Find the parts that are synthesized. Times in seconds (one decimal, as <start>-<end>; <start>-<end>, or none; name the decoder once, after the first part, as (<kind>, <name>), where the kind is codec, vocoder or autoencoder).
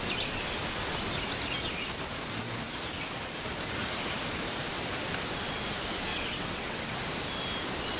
6.1-7.0 (vocoder, WaveNeXt)